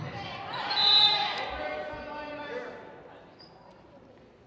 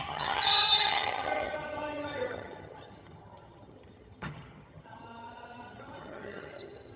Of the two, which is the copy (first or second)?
second